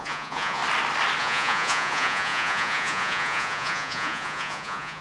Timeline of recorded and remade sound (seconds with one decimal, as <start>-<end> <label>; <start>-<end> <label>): 0.0-0.6 remade; 0.6-1.2 recorded; 1.2-5.0 remade